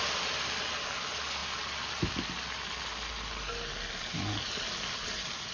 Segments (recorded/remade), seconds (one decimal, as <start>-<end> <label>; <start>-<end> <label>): 0.0-5.5 recorded